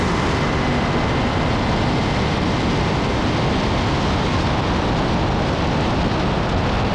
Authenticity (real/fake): real